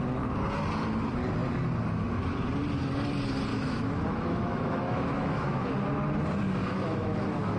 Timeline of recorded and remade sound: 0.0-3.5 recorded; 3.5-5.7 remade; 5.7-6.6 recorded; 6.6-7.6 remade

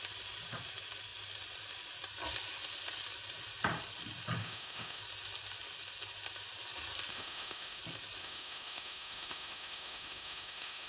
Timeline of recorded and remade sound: 0.0-4.4 recorded; 4.4-5.0 remade; 5.0-7.1 recorded; 7.1-7.8 remade; 7.8-8.2 recorded; 8.2-10.9 remade

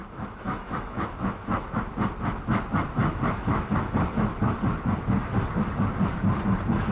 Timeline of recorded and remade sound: 0.0-1.8 remade; 1.8-3.0 recorded; 3.0-4.5 remade; 4.5-6.9 recorded

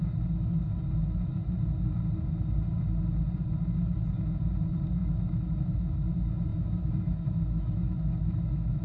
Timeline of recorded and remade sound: 0.0-5.0 recorded; 5.0-6.1 remade; 6.1-6.5 recorded; 6.5-8.8 remade

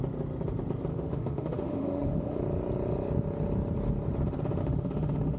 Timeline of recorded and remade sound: 0.0-0.9 recorded; 0.9-2.4 remade; 2.4-4.6 recorded; 4.6-5.4 remade

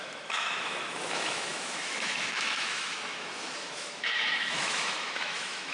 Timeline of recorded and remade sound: 0.0-5.7 remade

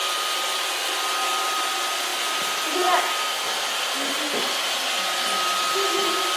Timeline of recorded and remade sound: 0.0-6.4 recorded

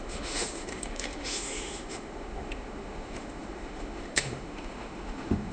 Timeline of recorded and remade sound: 0.0-5.5 remade